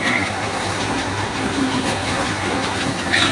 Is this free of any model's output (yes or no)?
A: no